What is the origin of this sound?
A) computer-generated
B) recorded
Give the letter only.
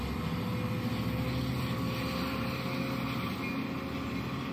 B